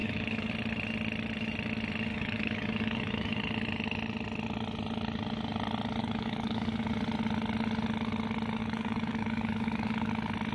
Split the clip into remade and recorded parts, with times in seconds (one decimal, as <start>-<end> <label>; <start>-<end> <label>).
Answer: 0.0-0.5 remade; 0.5-2.1 recorded; 2.1-3.4 remade; 3.4-6.0 recorded; 6.0-6.9 remade; 6.9-8.6 recorded; 8.6-10.1 remade; 10.1-10.5 recorded